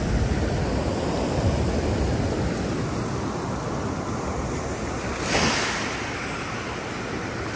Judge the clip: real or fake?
real